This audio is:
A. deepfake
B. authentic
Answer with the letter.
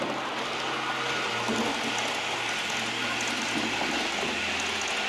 B